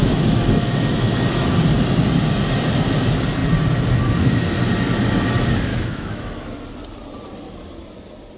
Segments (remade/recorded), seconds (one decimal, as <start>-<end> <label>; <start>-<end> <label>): 0.0-1.5 remade; 1.5-5.7 recorded; 5.7-6.2 remade; 6.2-8.4 recorded